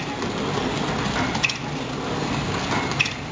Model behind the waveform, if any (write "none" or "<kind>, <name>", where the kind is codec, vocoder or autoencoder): none